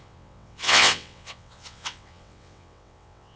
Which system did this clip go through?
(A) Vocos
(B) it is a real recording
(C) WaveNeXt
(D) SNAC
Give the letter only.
C